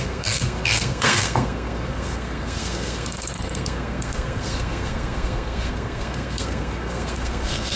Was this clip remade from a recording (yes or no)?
yes